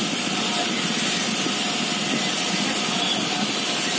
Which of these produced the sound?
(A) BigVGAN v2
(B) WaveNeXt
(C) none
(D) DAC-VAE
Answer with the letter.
C